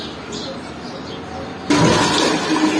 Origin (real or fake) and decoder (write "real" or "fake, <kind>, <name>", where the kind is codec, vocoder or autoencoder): real